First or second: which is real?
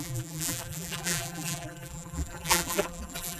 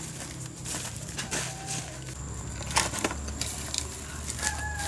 second